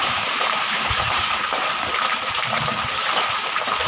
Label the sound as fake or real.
fake